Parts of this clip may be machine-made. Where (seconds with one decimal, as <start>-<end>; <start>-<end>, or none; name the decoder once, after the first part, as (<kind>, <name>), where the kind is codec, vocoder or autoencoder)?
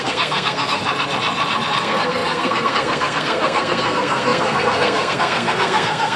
0.0-0.8 (codec, SNAC); 1.8-6.2